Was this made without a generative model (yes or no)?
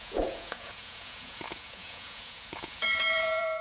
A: no